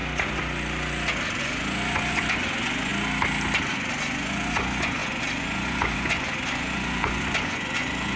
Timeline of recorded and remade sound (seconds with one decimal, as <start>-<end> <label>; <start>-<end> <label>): 0.0-1.4 recorded; 1.4-2.9 remade; 2.9-3.7 recorded; 3.7-8.2 remade